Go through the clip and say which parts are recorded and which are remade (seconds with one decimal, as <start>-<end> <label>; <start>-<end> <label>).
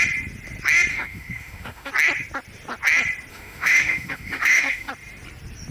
0.0-0.9 recorded; 0.9-1.9 remade; 1.9-3.3 recorded; 3.3-4.9 remade; 4.9-5.7 recorded